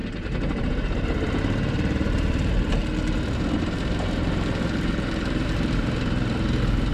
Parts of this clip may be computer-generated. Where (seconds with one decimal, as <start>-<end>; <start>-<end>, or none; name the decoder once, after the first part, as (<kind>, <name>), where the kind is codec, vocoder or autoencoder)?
0.0-2.8 (vocoder, BigVGAN v2); 3.6-6.9